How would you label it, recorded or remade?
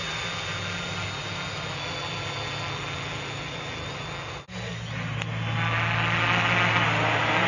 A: recorded